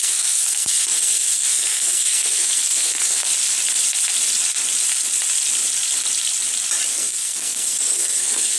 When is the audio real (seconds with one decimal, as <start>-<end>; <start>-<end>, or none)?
3.3-6.9